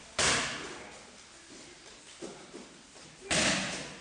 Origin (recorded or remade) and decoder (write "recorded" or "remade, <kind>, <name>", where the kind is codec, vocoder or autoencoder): recorded